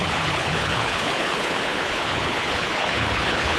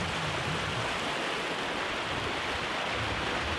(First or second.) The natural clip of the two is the second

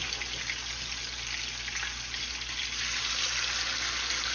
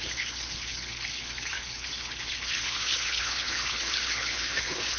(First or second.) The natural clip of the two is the first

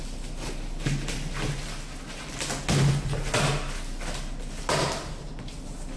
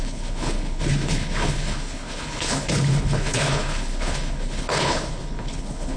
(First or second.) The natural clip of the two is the first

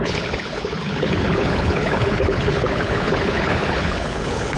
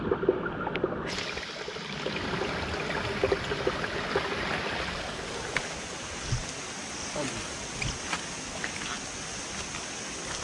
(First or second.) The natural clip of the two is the second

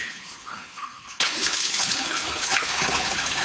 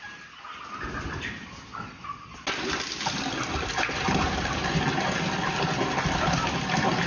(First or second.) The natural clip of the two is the second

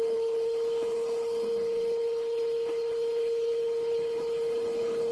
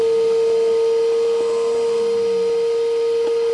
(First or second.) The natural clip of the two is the second